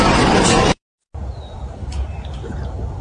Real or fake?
real